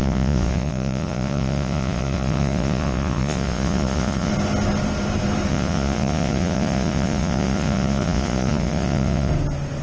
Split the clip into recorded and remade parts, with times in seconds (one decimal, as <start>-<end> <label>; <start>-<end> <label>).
0.0-4.3 remade; 4.3-5.5 recorded; 5.5-9.3 remade; 9.3-9.8 recorded

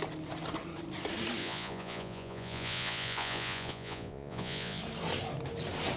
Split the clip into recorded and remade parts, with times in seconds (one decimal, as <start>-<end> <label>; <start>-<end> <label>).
0.0-1.4 recorded; 1.4-4.8 remade; 4.8-6.0 recorded

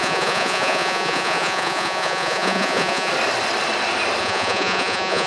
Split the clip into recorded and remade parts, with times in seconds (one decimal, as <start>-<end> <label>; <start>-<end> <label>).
0.0-3.1 remade; 3.1-4.2 recorded; 4.2-5.3 remade

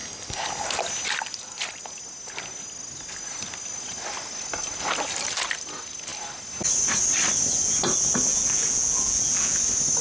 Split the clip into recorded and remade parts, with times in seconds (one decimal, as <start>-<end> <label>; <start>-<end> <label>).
0.0-8.3 recorded; 8.3-9.6 remade; 9.6-10.0 recorded